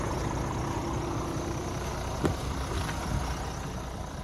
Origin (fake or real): real